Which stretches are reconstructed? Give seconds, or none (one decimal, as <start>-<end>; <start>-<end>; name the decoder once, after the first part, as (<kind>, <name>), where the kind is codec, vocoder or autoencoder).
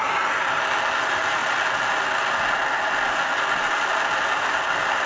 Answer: none